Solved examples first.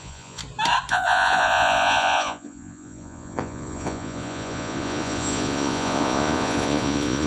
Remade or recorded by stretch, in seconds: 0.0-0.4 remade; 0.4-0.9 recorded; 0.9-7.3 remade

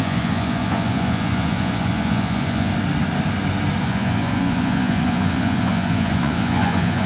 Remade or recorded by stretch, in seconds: 0.0-2.7 remade; 2.7-3.8 recorded; 3.8-7.1 remade

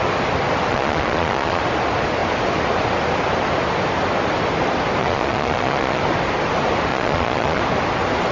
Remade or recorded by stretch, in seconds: 0.0-0.7 recorded; 0.7-1.6 remade; 1.6-5.0 recorded; 5.0-6.0 remade; 6.0-6.9 recorded; 6.9-7.6 remade; 7.6-8.3 recorded

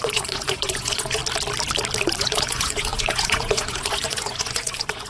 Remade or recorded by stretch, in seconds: 0.0-1.2 remade; 1.2-2.2 recorded; 2.2-5.1 remade

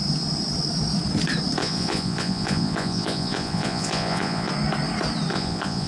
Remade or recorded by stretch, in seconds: 0.0-1.6 recorded; 1.6-4.5 remade; 4.5-5.3 recorded; 5.3-5.9 remade

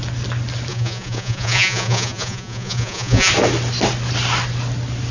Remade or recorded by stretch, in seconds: 0.0-0.7 recorded; 0.7-3.3 remade; 3.3-5.1 recorded